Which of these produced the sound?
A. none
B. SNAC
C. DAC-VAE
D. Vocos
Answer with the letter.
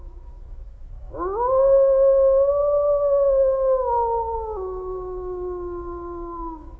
C